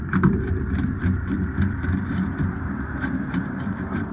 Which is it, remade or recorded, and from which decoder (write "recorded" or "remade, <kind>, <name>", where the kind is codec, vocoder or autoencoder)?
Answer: remade, vocoder, BigVGAN v2